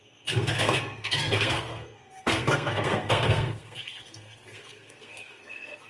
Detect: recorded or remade remade